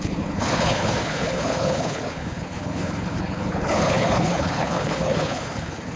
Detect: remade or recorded remade